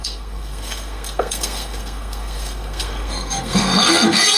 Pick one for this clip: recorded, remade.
remade